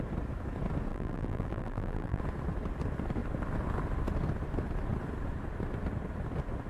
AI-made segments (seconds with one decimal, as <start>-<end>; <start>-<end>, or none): 0.9-2.2